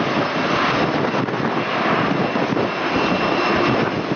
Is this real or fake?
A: real